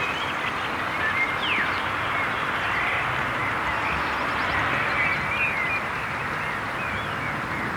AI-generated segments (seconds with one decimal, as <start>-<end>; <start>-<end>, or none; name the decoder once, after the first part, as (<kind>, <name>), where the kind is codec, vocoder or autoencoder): none